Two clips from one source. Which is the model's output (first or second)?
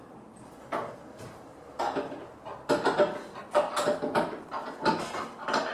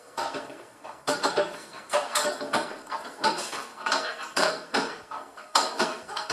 second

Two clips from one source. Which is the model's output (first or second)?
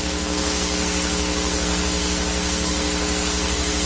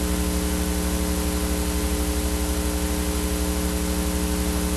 first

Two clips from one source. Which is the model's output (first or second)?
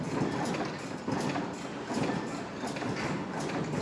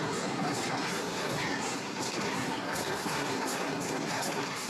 second